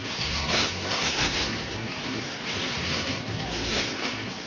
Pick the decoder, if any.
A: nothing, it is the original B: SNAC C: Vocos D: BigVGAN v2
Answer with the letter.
B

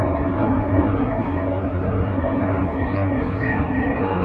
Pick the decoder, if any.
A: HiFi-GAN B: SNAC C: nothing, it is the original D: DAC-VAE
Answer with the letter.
B